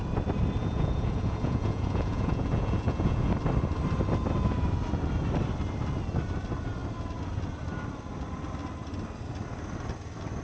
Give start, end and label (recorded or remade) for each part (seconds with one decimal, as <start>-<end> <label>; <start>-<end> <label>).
0.0-0.6 recorded; 0.6-3.3 remade; 3.3-10.4 recorded